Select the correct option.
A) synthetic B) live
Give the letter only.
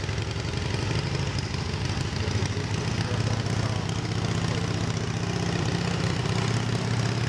B